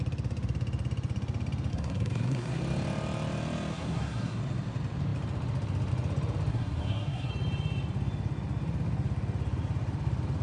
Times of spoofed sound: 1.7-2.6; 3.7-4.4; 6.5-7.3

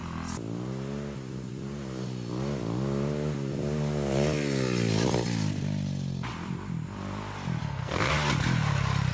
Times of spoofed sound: 7.6-8.1

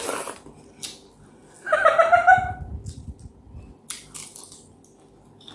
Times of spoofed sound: none

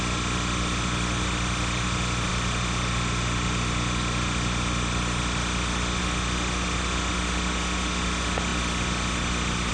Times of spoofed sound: none

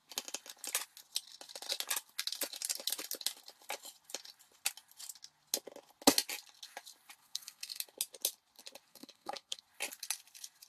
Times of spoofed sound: 7.2-7.8; 8.9-9.6

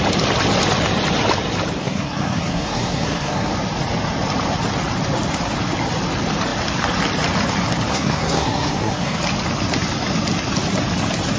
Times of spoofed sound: 1.8-3.5; 7.9-9.2

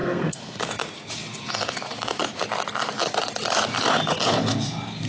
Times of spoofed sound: 0.0-0.7

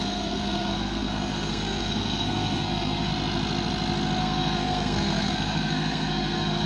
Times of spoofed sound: 0.0-3.1; 4.2-6.7